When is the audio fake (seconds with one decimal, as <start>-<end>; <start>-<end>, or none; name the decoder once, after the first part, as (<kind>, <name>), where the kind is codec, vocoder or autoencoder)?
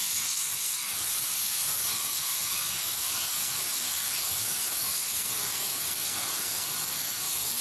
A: 0.0-7.6 (codec, SNAC)